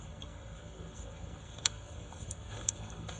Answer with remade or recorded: remade